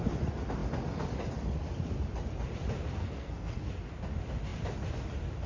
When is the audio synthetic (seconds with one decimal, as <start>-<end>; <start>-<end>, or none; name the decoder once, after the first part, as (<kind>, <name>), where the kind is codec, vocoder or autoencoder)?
3.0-3.7 (codec, SNAC)